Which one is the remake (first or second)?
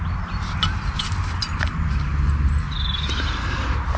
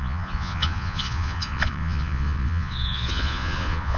second